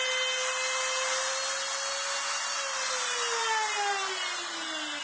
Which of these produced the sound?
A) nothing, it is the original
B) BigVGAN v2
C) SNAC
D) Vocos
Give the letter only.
A